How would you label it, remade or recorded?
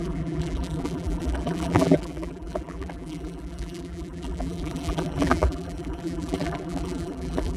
remade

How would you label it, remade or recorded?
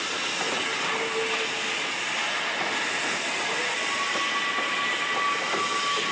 recorded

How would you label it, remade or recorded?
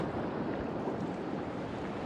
recorded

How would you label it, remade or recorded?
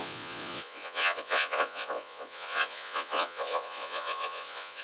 remade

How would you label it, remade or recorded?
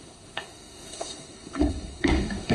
remade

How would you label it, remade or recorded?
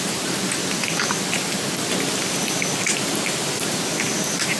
recorded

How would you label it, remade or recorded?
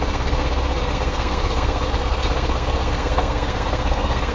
remade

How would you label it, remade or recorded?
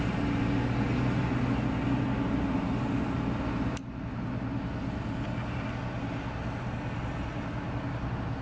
recorded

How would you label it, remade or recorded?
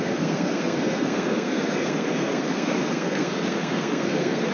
remade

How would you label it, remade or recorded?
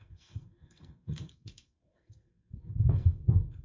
remade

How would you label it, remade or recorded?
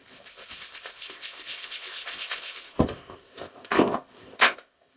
remade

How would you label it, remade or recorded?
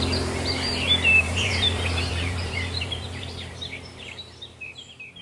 remade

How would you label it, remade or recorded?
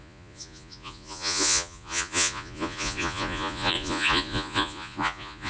remade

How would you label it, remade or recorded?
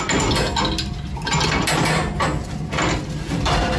recorded